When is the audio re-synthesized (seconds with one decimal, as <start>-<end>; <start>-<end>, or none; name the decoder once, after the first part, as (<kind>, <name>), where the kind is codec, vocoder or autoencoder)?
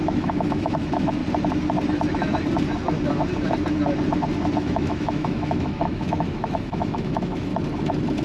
0.0-1.2 (autoencoder, DAC-VAE); 4.6-7.5